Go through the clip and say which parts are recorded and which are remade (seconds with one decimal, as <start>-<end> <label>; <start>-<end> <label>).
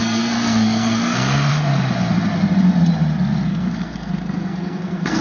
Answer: 0.0-1.5 remade; 1.5-3.5 recorded; 3.5-5.2 remade